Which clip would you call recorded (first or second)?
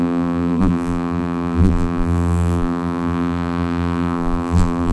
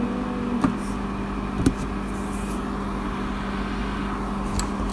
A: second